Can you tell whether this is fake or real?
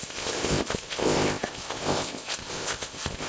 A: fake